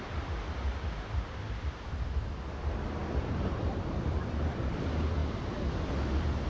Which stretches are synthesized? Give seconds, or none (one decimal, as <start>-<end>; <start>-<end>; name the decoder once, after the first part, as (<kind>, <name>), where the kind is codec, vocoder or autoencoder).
none